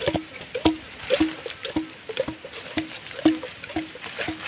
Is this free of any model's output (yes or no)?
yes